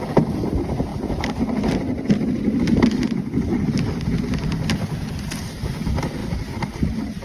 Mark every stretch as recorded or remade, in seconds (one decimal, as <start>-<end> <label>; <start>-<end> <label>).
0.0-0.9 recorded; 0.9-1.7 remade; 1.7-7.2 recorded